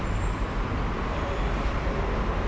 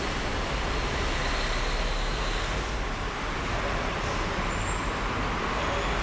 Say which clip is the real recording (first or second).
second